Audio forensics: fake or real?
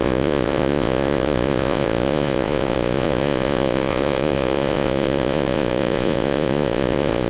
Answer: fake